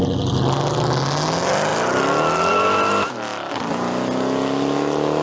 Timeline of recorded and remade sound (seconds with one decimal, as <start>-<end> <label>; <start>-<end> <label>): 0.0-5.2 recorded